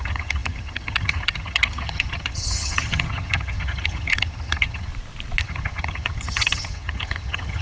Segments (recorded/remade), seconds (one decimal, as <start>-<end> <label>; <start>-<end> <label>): 0.0-4.9 remade; 4.9-5.4 recorded; 5.4-7.6 remade